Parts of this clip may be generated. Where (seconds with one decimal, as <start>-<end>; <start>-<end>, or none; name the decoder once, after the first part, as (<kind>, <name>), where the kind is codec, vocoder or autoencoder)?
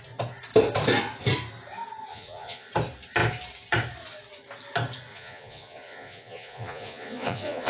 2.1-2.7 (vocoder, Vocos); 5.1-7.7